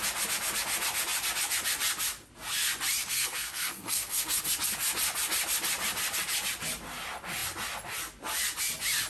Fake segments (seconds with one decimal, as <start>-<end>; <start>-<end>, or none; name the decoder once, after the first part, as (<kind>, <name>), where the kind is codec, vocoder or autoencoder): 3.0-4.4 (codec, SNAC)